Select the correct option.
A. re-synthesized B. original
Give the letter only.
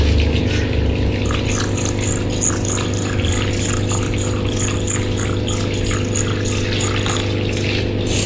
B